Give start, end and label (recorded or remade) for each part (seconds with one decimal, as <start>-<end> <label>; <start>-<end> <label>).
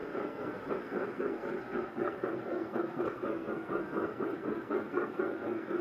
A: 0.0-5.8 remade